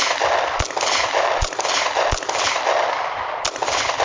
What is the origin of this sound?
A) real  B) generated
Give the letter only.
A